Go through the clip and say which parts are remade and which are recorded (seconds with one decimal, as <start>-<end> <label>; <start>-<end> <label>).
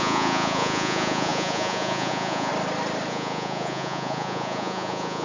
0.0-2.5 remade; 2.5-3.1 recorded; 3.1-5.2 remade